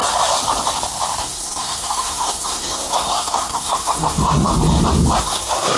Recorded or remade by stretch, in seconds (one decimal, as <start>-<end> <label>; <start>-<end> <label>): 0.0-1.2 recorded; 1.2-4.5 remade; 4.5-5.2 recorded; 5.2-5.8 remade